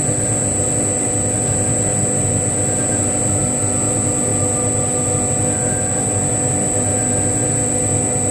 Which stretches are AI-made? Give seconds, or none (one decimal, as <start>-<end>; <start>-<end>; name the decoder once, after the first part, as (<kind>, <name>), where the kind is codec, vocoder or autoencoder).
none